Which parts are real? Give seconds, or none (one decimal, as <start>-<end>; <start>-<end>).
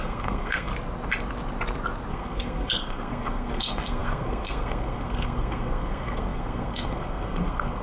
0.7-2.1